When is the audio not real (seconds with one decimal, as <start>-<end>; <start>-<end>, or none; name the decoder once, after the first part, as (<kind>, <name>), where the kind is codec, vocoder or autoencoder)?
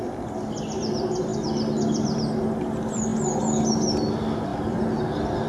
none